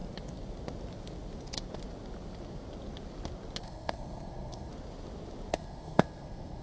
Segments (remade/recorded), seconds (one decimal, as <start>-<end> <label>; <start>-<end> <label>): 0.0-3.6 recorded; 3.6-4.7 remade; 4.7-5.5 recorded; 5.5-6.6 remade

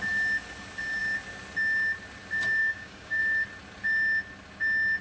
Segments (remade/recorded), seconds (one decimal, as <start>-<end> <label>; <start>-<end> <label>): 0.0-2.6 recorded; 2.6-3.2 remade; 3.2-5.0 recorded